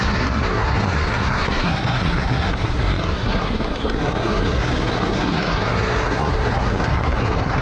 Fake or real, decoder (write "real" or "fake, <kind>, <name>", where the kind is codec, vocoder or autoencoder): fake, codec, SNAC